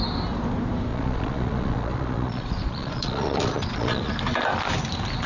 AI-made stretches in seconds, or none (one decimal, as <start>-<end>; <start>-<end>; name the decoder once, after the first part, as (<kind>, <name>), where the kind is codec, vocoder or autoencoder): 0.9-4.1 (vocoder, Vocos)